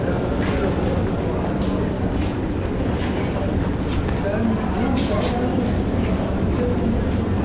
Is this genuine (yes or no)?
yes